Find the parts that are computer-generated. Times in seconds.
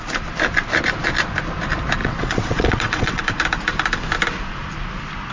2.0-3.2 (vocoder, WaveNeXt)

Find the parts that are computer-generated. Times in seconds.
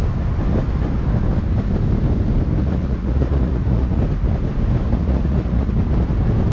2.6-4.0 (vocoder, Vocos); 4.9-5.7